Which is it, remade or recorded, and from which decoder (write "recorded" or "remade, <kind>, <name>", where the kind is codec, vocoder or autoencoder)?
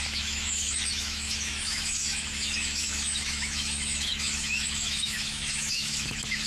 remade, autoencoder, DAC-VAE